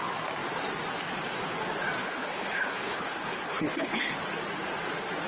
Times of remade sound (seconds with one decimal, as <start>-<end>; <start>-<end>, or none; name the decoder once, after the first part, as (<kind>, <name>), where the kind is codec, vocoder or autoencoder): 2.0-4.1 (codec, HILCodec)